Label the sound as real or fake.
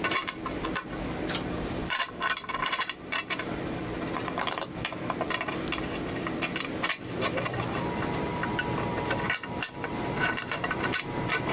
fake